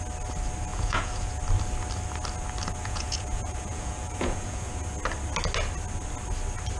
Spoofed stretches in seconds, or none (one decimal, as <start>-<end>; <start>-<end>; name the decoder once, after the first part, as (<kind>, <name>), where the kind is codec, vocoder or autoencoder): 0.7-1.3 (vocoder, Vocos); 2.8-4.7